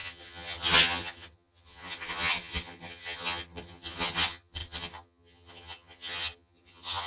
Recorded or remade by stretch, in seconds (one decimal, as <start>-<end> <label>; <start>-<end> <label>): 0.0-7.1 remade